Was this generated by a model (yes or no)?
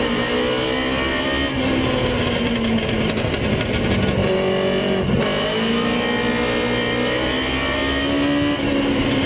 no